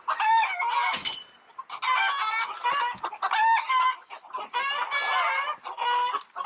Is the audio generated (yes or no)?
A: no